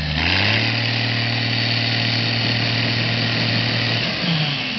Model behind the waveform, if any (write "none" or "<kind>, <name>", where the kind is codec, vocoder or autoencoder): none